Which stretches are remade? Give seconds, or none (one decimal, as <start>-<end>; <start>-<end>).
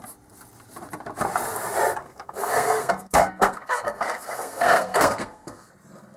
2.0-5.7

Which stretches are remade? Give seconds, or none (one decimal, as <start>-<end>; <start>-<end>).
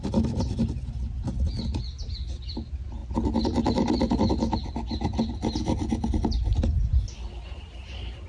none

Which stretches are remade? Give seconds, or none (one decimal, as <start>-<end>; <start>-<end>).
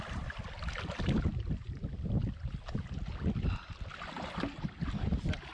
none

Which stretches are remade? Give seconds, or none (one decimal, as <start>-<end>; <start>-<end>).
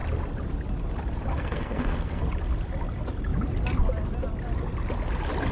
1.3-2.2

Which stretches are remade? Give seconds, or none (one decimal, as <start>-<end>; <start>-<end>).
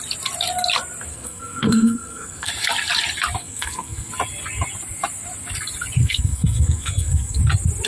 1.1-2.5; 3.4-4.1; 6.0-7.4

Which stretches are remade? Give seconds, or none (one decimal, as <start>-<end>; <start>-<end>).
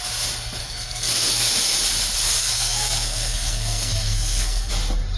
0.6-1.5; 2.4-4.7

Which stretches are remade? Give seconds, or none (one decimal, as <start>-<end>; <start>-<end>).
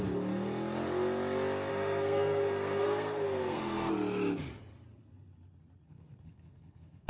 1.7-3.9; 5.9-7.1